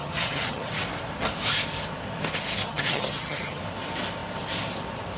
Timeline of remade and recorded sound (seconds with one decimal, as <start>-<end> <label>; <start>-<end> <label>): 0.0-0.7 remade; 0.7-2.6 recorded; 2.6-3.6 remade; 3.6-5.2 recorded